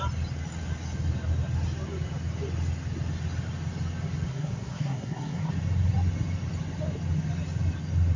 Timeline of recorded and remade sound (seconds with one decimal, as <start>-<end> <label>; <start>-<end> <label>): 0.0-4.3 recorded; 4.3-5.5 remade; 5.5-8.2 recorded